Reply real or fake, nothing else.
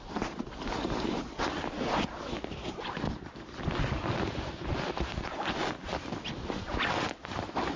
real